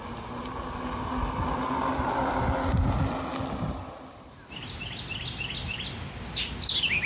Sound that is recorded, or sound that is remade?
recorded